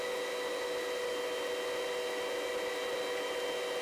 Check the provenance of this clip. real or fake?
real